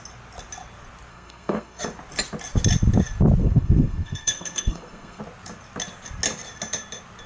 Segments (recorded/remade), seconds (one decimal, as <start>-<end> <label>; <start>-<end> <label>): 0.0-1.1 recorded; 1.1-1.8 remade; 1.8-3.4 recorded; 3.4-5.2 remade; 5.2-7.3 recorded